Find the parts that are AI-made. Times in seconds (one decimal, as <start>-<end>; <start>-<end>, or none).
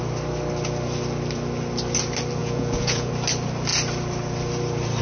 2.4-3.1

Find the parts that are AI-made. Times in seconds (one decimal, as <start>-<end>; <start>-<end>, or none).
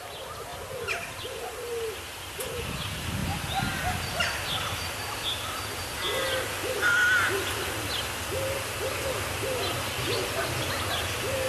none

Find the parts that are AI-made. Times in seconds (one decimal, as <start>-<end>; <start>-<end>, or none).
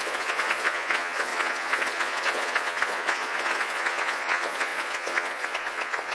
0.0-6.1